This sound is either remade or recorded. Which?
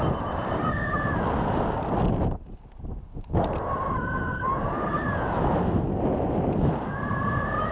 recorded